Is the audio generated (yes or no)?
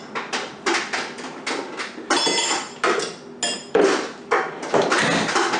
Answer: no